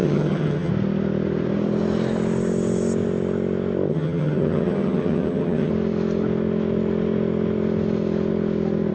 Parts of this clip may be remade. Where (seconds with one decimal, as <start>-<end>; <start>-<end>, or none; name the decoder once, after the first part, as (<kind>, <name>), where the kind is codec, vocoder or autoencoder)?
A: 0.0-0.7 (vocoder, HiFi-GAN); 3.9-5.7